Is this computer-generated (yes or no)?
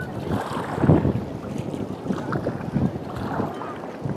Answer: no